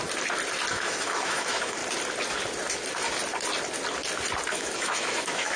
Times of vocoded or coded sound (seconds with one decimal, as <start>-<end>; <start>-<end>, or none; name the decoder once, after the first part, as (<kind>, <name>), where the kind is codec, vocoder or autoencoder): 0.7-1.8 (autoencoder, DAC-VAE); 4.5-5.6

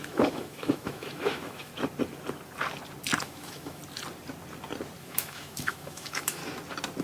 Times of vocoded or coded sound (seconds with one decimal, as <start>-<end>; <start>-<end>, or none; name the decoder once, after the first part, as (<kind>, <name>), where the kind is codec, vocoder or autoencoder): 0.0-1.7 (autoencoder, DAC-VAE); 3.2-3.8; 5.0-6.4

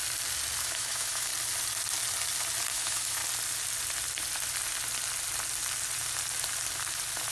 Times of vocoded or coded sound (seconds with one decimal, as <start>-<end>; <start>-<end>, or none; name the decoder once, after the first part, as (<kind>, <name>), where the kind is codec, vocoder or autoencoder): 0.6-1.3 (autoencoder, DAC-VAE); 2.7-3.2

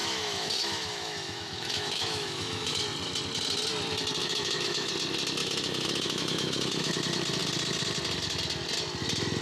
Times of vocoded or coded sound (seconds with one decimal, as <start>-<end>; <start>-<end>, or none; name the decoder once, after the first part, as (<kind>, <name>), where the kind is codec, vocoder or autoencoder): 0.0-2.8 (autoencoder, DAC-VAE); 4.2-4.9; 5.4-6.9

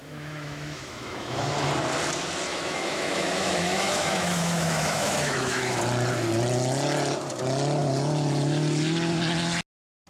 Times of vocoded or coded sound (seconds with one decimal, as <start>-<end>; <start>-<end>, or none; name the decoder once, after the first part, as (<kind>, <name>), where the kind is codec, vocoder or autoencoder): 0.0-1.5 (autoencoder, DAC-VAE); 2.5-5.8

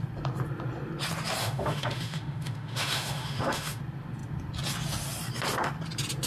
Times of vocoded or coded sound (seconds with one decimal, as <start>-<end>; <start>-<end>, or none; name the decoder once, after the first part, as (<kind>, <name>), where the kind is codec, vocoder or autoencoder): 1.4-3.8 (autoencoder, DAC-VAE)

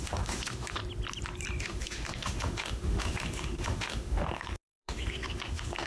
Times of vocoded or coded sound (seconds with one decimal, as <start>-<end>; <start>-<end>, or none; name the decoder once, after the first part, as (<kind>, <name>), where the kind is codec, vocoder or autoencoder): 0.0-0.8 (autoencoder, DAC-VAE); 1.6-5.9

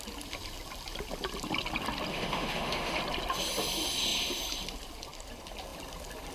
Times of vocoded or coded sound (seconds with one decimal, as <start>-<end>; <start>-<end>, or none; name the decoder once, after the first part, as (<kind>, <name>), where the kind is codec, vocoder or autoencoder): 2.1-3.0 (autoencoder, DAC-VAE)